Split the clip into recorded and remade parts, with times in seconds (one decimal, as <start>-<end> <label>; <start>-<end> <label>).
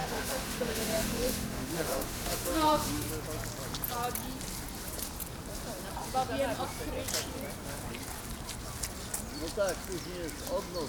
0.0-3.1 remade; 3.1-10.9 recorded